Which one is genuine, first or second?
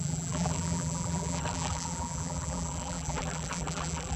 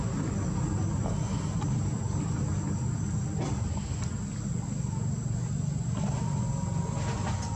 second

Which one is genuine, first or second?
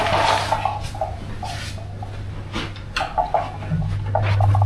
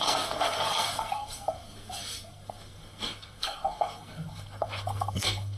first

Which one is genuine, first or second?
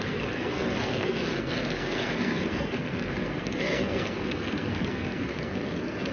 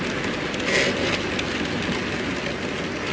second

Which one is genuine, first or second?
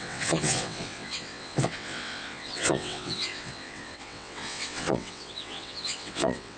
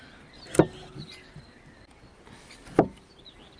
second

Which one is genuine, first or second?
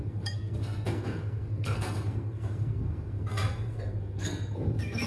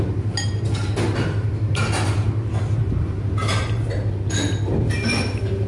second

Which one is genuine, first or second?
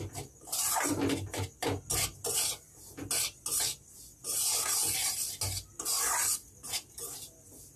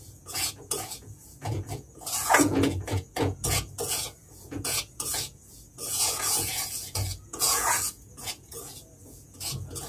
first